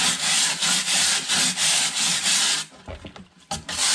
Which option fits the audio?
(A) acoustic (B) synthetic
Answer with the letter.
A